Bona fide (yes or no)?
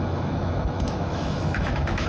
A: no